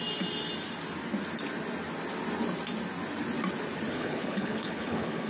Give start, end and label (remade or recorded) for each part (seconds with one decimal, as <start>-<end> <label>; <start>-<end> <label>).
0.0-3.9 recorded; 3.9-5.3 remade

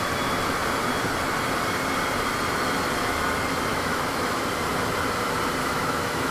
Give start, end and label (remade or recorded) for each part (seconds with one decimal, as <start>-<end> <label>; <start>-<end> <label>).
0.0-3.7 recorded; 3.7-4.4 remade; 4.4-5.6 recorded; 5.6-6.3 remade

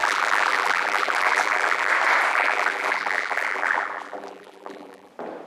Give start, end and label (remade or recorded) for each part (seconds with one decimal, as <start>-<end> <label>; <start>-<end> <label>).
0.0-1.9 remade; 1.9-2.3 recorded; 2.3-5.1 remade; 5.1-5.5 recorded

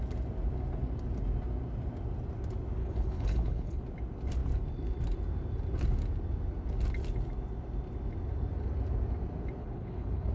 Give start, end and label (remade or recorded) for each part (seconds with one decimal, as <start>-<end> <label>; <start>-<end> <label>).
0.0-2.8 recorded; 2.8-3.8 remade; 3.8-9.6 recorded; 9.6-10.3 remade

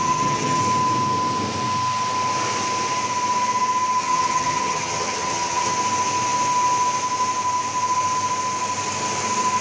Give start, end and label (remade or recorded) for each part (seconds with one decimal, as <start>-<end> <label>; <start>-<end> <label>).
0.0-0.6 remade; 0.6-4.0 recorded; 4.0-5.7 remade; 5.7-9.6 recorded

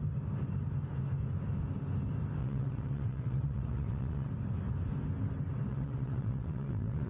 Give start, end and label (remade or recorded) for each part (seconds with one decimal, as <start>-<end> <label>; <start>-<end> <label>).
0.0-2.4 recorded; 2.4-4.3 remade; 4.3-5.7 recorded; 5.7-7.1 remade

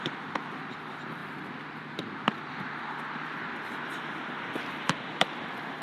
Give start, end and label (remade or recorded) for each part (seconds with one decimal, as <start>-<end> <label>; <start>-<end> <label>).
0.0-1.2 remade; 1.2-2.1 recorded; 2.1-5.8 remade